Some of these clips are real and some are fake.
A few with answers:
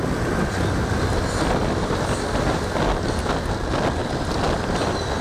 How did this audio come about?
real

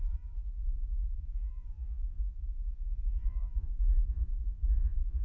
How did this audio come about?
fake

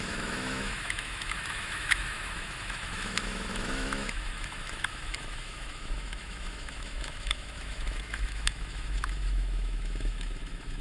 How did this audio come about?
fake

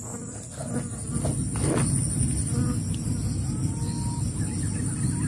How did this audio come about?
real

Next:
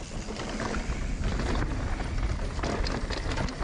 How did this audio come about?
real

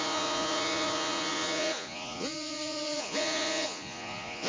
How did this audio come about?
fake